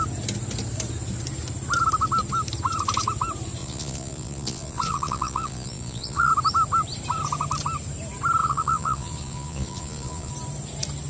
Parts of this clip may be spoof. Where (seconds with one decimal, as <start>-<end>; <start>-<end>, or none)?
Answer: 3.6-6.3; 8.4-10.3